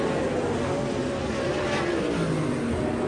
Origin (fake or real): real